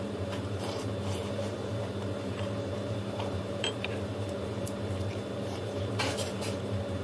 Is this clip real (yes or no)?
no